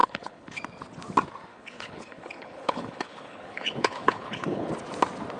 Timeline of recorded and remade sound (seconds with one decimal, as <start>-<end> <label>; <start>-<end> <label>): 0.0-0.6 remade; 0.6-1.5 recorded; 1.5-4.7 remade; 4.7-5.4 recorded